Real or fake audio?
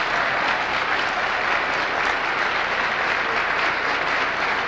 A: real